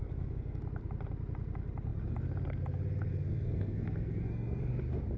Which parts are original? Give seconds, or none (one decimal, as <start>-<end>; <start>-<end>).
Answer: 0.6-3.1; 4.7-5.2